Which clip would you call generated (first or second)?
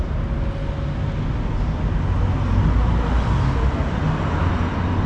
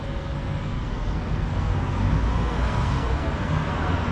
second